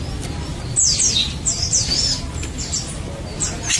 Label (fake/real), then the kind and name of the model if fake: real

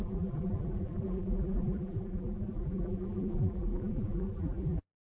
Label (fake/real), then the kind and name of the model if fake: fake, vocoder, BigVGAN v2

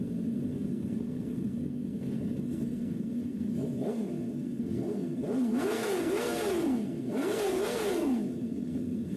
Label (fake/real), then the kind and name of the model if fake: fake, codec, SNAC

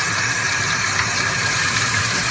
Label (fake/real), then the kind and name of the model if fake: fake, vocoder, BigVGAN v2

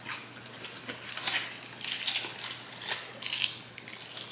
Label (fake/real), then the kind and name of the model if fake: real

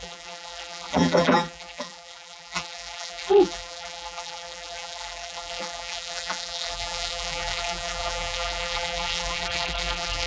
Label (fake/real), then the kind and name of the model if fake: fake, vocoder, BigVGAN v2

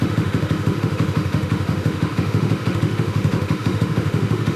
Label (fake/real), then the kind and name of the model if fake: fake, autoencoder, DAC-VAE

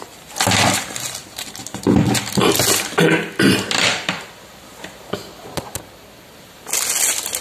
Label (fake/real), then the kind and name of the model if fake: real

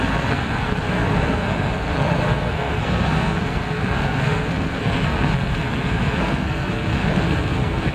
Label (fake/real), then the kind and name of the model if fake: fake, codec, SNAC